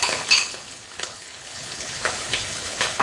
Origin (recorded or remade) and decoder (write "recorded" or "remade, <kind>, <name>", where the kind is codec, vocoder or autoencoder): remade, codec, HILCodec